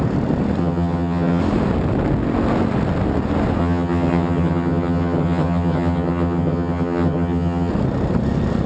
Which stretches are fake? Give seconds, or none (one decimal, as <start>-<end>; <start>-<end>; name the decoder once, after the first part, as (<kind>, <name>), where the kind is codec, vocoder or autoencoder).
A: 0.6-1.4 (vocoder, HiFi-GAN); 3.6-7.7